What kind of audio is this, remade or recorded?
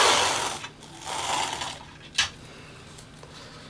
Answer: recorded